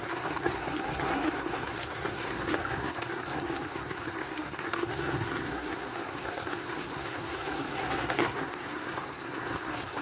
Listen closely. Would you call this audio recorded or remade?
remade